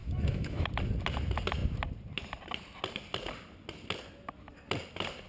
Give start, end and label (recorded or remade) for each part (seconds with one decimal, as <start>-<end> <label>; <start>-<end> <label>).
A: 0.0-0.7 remade; 0.7-5.3 recorded